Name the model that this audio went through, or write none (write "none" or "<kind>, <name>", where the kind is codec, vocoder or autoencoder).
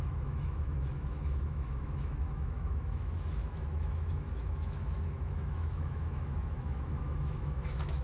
autoencoder, DAC-VAE